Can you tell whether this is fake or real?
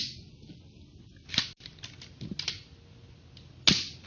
real